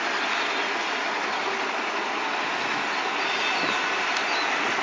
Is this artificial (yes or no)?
no